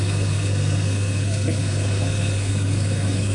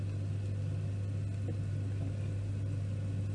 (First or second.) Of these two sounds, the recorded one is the second